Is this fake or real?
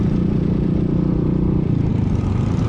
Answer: real